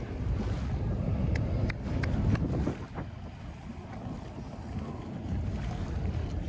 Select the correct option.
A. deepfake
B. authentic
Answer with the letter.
B